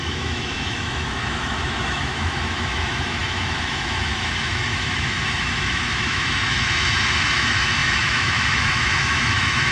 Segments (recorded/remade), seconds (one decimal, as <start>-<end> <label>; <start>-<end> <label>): 0.0-9.7 remade